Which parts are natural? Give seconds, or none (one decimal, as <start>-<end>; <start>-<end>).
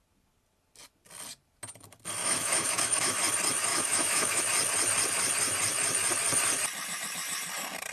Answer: 0.0-2.2; 3.2-3.7; 4.4-7.9